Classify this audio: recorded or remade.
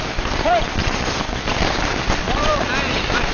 remade